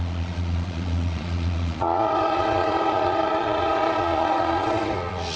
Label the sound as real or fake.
fake